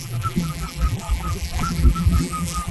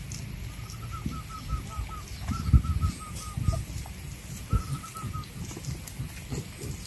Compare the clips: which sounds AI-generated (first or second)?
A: first